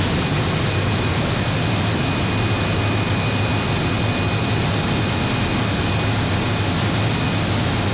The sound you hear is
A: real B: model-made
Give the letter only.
A